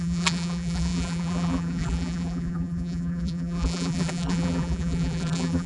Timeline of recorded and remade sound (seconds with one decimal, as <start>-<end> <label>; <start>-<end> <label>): 0.0-5.7 remade